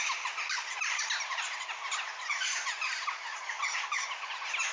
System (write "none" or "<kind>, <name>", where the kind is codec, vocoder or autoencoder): none